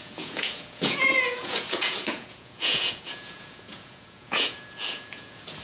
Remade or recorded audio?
remade